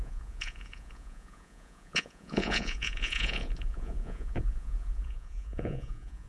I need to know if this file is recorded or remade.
remade